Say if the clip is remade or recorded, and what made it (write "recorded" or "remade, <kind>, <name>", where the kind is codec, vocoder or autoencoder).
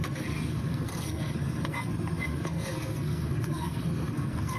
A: remade, codec, SNAC